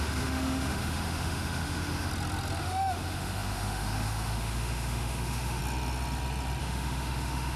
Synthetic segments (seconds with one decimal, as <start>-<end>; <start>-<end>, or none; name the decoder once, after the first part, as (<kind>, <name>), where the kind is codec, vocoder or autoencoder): 0.0-2.1 (autoencoder, DAC-VAE); 2.6-5.6; 6.6-7.6